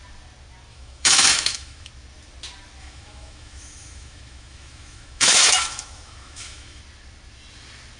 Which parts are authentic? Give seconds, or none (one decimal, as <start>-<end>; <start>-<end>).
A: 0.0-0.7; 1.9-2.8; 6.8-8.0